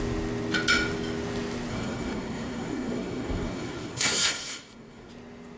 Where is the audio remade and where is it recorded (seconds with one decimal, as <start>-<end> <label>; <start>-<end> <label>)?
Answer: 0.0-1.7 recorded; 1.7-5.1 remade; 5.1-5.6 recorded